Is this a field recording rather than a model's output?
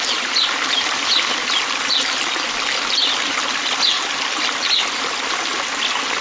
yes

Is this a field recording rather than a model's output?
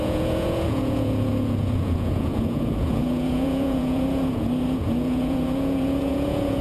no